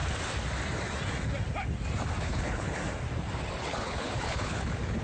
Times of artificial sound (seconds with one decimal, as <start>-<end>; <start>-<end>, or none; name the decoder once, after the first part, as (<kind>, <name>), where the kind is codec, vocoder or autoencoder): 2.2-2.8 (codec, HILCodec); 3.6-5.0